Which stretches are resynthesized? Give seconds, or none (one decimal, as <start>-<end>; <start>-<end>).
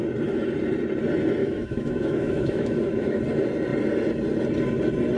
1.4-3.2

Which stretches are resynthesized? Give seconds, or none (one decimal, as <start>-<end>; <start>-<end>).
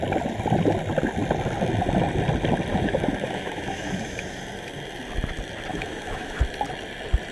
2.7-4.4; 5.7-6.4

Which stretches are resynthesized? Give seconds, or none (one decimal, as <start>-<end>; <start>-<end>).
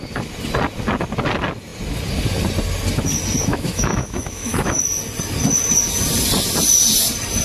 3.5-4.8